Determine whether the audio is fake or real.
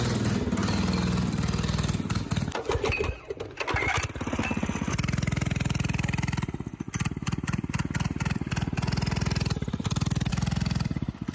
real